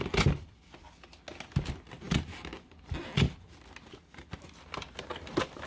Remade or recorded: recorded